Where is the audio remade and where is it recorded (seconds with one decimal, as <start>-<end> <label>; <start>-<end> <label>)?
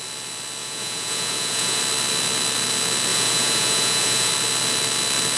0.0-0.6 recorded; 0.6-1.8 remade; 1.8-3.1 recorded; 3.1-4.3 remade; 4.3-5.4 recorded